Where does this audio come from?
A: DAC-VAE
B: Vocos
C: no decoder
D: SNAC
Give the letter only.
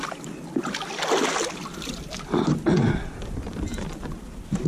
C